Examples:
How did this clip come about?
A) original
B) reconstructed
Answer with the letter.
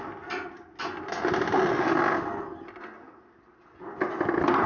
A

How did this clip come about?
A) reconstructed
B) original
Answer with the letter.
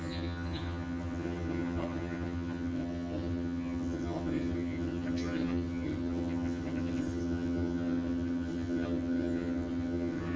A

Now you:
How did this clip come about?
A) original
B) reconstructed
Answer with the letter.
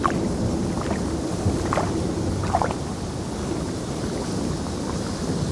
A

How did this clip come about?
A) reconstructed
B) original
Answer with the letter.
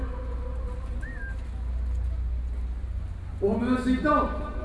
B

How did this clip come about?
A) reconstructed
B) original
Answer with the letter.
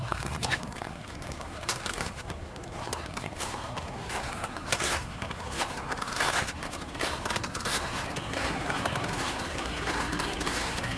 A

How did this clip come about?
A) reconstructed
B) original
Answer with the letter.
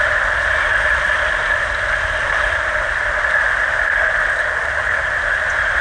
B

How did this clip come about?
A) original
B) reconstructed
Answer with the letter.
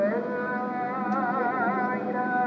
A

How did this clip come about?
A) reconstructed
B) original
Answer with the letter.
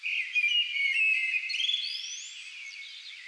B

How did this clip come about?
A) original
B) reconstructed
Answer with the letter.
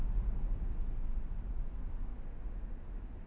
A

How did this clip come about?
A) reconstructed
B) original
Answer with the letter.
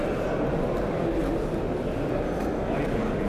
B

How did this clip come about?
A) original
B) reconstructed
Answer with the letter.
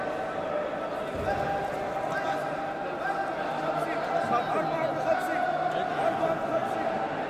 A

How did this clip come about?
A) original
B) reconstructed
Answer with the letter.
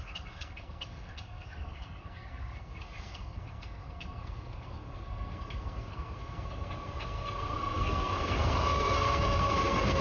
B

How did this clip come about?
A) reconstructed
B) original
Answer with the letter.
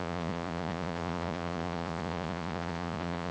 A